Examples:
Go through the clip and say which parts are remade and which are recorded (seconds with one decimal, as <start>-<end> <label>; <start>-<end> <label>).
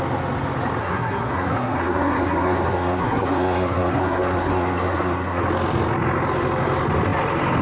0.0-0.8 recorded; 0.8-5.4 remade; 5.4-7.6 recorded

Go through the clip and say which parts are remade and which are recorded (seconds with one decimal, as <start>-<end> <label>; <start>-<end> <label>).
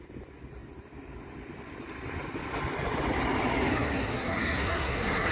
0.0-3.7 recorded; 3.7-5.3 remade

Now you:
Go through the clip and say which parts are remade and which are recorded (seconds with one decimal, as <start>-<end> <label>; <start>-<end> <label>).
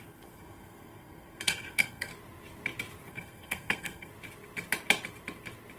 0.0-2.1 remade; 2.1-3.1 recorded; 3.1-4.1 remade; 4.1-5.8 recorded